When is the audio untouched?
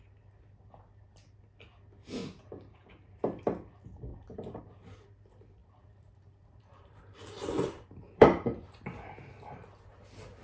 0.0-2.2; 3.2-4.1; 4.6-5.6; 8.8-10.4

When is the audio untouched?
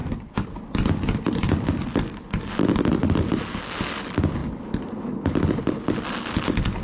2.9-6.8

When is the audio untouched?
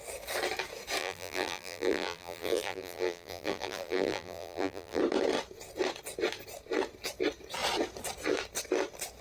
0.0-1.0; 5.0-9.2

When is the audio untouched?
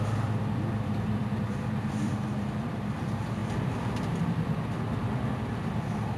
3.4-4.2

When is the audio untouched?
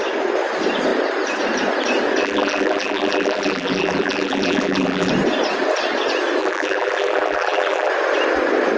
0.0-2.2; 5.1-6.4; 7.9-8.8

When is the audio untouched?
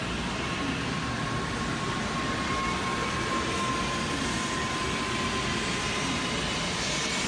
0.0-7.3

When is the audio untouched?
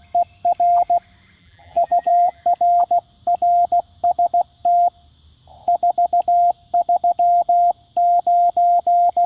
0.0-1.4; 2.4-9.3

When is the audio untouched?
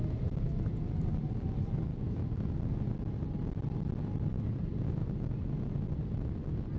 1.9-4.3; 5.0-6.8